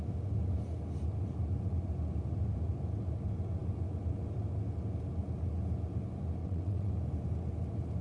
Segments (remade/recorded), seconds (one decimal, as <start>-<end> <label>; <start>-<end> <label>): 0.0-6.4 recorded; 6.4-6.9 remade; 6.9-8.0 recorded

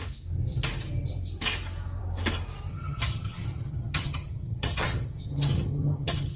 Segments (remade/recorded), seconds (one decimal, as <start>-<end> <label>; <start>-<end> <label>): 0.0-2.7 recorded; 2.7-6.4 remade

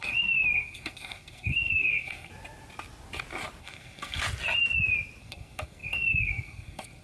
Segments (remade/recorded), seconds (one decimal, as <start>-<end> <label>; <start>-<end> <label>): 0.0-2.3 remade; 2.3-3.6 recorded; 3.6-4.2 remade; 4.2-5.2 recorded; 5.2-7.0 remade

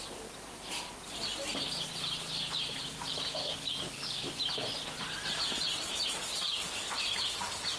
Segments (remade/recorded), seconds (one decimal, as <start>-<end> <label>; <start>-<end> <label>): 0.0-3.4 recorded; 3.4-4.3 remade; 4.3-6.2 recorded; 6.2-6.9 remade; 6.9-7.8 recorded